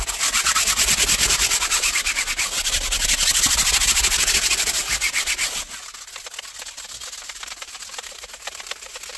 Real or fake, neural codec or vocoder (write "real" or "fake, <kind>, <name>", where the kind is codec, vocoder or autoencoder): real